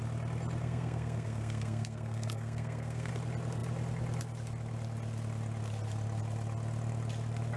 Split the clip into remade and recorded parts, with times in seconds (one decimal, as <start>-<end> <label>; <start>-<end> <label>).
0.0-0.6 recorded; 0.6-3.1 remade; 3.1-7.6 recorded